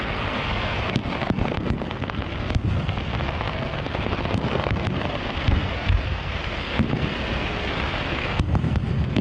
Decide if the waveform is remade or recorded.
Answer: remade